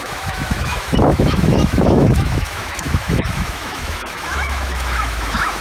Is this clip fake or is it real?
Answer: fake